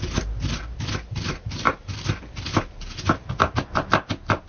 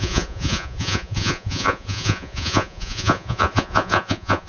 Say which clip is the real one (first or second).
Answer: first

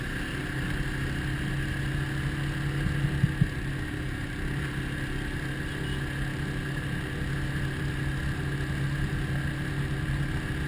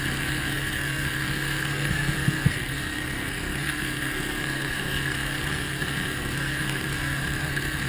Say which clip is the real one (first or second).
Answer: first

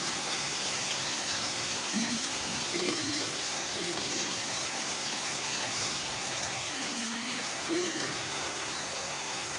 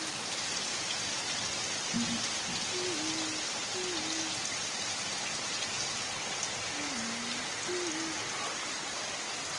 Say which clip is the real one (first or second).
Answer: second